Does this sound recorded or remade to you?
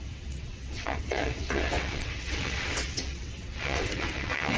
remade